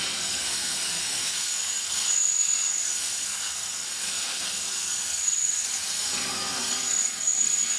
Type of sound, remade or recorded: remade